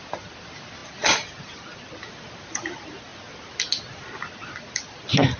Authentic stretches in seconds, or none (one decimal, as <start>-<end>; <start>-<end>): 0.0-5.4